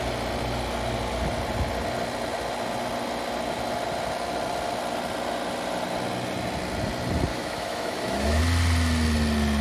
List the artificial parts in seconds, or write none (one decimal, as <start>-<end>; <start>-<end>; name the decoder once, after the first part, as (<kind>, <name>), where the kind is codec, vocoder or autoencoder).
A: 7.3-8.4 (autoencoder, DAC-VAE)